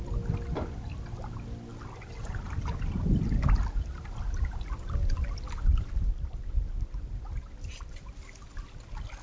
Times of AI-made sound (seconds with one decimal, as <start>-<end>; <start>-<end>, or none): none